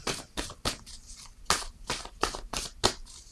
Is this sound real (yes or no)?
yes